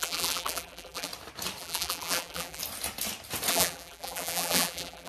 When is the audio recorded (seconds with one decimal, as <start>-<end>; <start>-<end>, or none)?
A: 1.1-1.6; 2.6-3.5